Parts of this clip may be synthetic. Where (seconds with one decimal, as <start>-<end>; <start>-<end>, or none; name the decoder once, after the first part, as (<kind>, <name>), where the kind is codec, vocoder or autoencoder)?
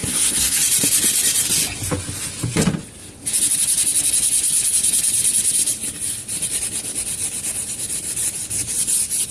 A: 0.0-0.6 (codec, SNAC)